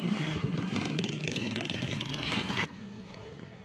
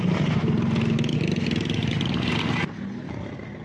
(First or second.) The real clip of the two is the second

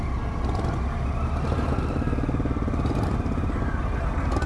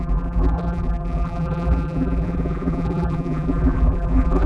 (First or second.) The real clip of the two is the first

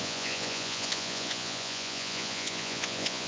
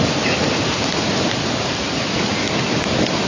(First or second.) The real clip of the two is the second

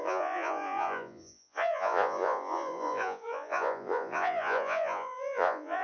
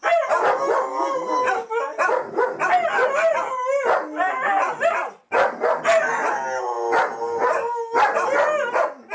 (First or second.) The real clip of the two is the second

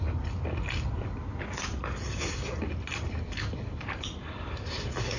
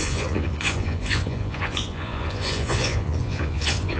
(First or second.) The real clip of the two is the first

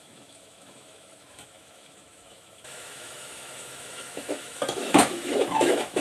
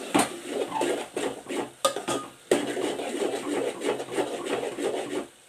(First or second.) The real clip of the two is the second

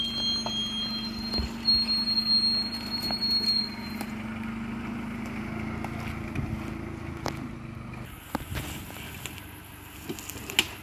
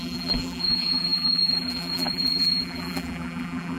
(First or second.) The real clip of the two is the first